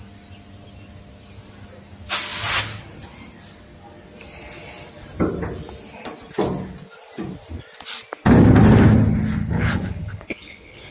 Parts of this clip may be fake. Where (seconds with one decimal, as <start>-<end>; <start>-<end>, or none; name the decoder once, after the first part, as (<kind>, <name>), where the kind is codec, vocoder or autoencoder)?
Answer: 9.4-10.9 (codec, HILCodec)